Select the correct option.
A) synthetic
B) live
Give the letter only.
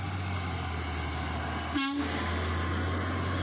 B